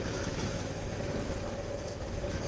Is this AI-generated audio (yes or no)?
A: yes